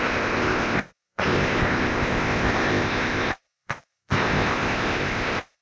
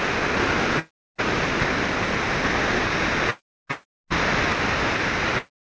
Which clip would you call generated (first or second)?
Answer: first